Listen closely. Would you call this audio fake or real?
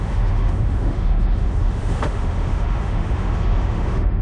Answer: fake